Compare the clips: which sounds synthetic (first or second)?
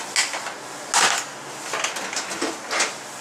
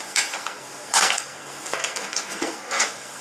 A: second